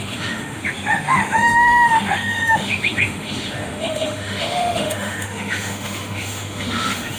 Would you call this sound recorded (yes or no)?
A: no